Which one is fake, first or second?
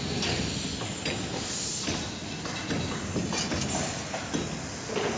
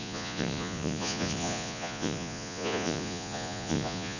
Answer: second